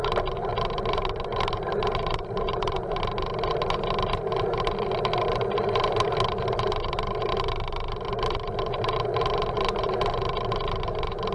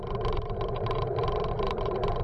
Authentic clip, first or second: first